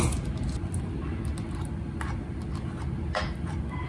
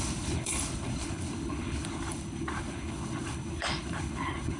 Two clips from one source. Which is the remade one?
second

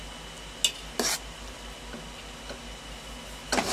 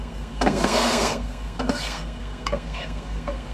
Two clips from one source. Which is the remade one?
second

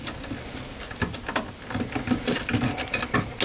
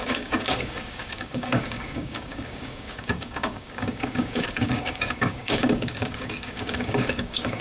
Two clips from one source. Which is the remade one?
second